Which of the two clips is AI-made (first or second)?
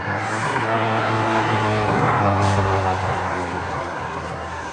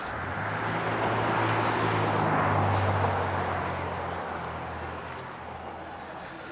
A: first